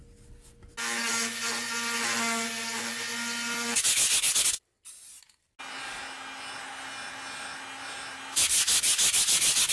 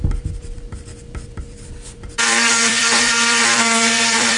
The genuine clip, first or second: first